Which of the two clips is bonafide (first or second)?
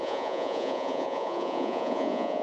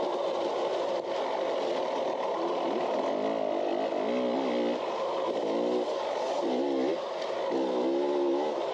second